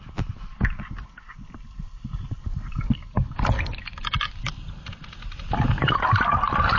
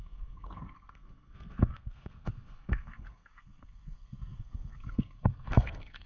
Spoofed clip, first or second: second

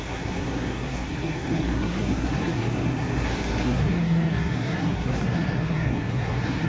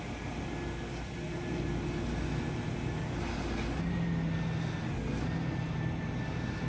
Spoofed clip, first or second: first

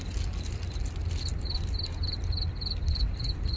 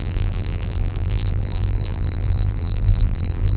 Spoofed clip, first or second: second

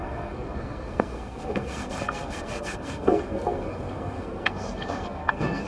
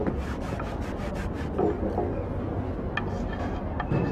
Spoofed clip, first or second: first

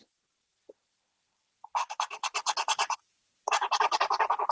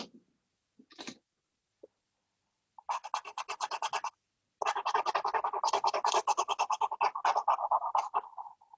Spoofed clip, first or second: first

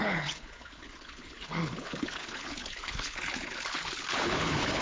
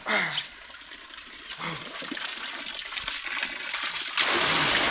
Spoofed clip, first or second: first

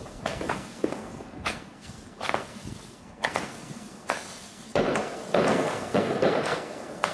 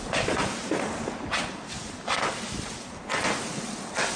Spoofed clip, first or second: first